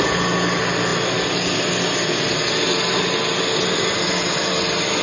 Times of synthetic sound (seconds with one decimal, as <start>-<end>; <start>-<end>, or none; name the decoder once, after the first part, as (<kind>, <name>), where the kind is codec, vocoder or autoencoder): none